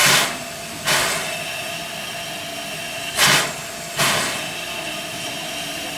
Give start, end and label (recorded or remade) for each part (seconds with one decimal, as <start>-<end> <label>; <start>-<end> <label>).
0.0-5.1 recorded; 5.1-6.0 remade